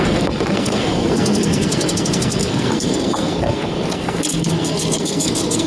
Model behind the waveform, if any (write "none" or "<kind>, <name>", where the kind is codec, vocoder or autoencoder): codec, SNAC